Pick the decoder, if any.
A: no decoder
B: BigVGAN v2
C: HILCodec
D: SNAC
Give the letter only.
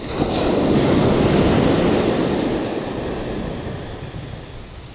A